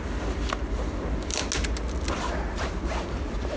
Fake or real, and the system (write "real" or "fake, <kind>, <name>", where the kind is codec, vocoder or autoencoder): real